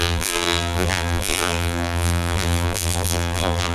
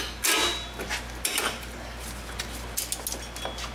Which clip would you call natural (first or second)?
second